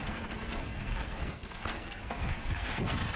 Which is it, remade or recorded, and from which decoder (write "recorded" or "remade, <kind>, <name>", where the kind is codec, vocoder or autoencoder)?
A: remade, codec, SNAC